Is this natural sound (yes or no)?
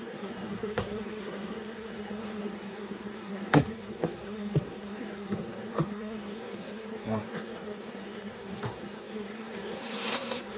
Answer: no